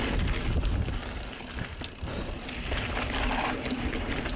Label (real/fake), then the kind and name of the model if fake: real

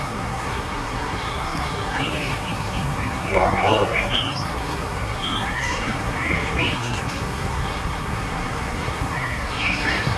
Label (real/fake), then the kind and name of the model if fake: fake, codec, SNAC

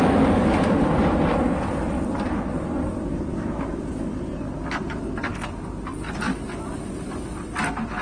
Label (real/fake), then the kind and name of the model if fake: real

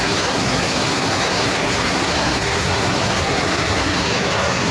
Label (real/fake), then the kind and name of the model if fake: fake, codec, SNAC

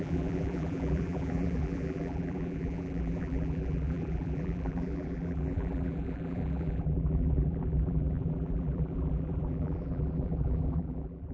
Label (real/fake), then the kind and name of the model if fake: fake, vocoder, BigVGAN v2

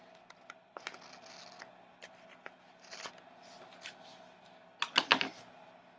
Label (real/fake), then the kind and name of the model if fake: real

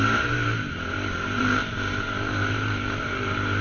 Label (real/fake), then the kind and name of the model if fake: fake, vocoder, BigVGAN v2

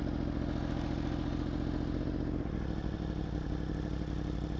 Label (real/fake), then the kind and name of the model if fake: real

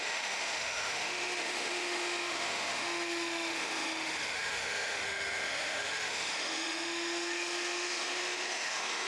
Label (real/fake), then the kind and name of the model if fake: fake, autoencoder, DAC-VAE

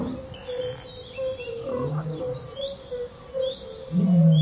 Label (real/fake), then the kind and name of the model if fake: real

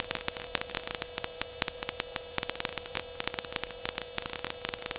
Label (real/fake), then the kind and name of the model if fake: real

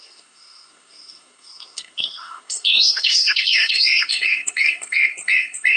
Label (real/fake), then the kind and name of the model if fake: fake, codec, SNAC